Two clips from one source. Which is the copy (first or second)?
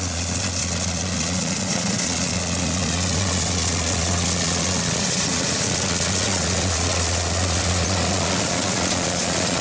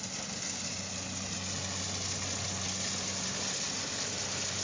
first